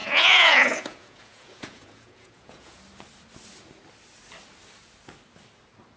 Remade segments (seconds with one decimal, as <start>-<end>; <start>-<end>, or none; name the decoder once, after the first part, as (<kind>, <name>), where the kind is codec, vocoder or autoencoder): 0.0-2.8 (vocoder, Vocos)